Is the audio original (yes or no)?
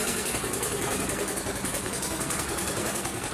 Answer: no